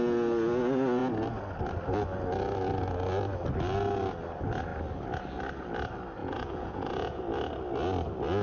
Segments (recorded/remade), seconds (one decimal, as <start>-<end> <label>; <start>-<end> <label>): 0.0-6.2 recorded; 6.2-7.2 remade; 7.2-8.4 recorded